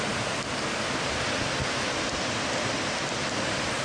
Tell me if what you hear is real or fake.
real